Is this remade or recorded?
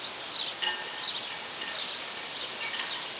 recorded